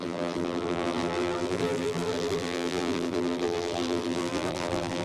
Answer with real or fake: fake